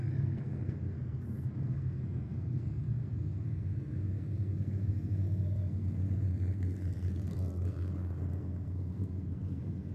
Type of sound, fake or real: fake